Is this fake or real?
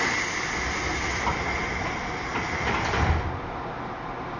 real